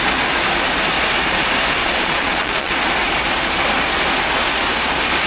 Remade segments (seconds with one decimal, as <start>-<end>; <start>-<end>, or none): 1.8-2.7